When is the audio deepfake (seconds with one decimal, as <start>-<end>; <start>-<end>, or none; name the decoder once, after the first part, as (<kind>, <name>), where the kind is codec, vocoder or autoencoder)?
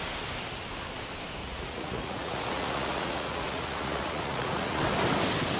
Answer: 1.4-4.8 (vocoder, Vocos)